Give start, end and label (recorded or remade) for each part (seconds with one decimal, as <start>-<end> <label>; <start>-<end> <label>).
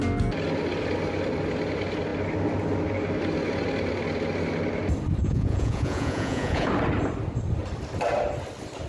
0.0-5.2 recorded; 5.2-6.7 remade; 6.7-8.9 recorded